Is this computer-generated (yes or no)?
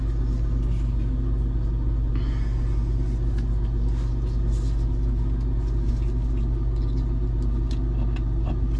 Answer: no